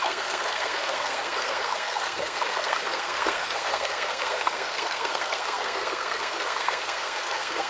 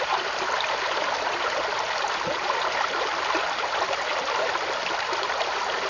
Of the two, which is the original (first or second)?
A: second